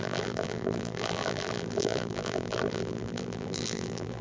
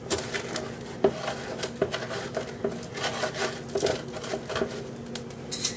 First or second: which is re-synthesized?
first